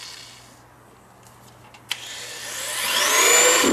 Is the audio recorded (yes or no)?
yes